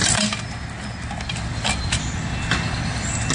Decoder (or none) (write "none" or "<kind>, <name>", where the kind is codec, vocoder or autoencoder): none